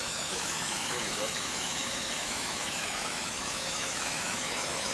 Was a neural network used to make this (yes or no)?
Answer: yes